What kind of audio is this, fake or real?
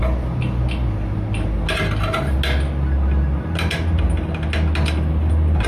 real